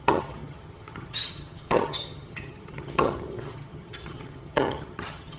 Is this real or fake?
fake